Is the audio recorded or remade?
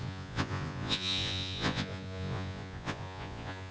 remade